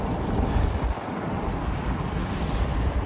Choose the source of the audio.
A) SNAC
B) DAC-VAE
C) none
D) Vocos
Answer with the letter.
C